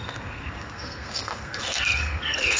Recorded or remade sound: remade